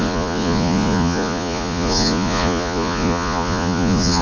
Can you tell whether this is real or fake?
fake